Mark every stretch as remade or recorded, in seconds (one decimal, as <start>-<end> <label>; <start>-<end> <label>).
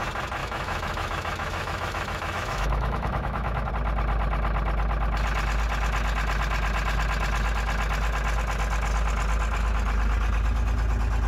0.0-0.4 recorded; 0.4-3.7 remade; 3.7-11.3 recorded